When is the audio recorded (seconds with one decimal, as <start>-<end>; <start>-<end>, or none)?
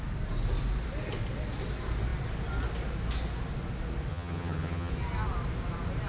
0.0-4.1; 4.9-6.1